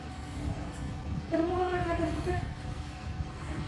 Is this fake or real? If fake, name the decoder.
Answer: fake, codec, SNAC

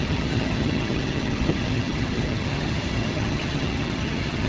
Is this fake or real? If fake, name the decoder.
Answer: fake, vocoder, HiFi-GAN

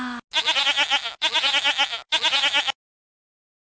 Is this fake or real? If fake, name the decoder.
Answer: real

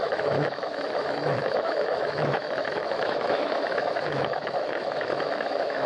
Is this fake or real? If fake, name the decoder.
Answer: fake, autoencoder, DAC-VAE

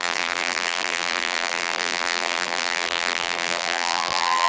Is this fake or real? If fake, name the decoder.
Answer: fake, vocoder, BigVGAN v2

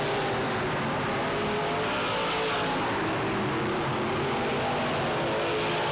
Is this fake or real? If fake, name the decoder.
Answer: real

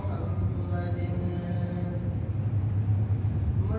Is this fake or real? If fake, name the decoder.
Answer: real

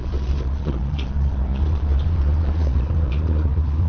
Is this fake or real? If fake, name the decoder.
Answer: fake, vocoder, Vocos